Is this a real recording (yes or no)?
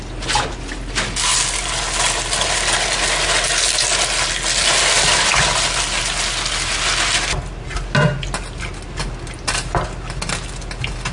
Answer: yes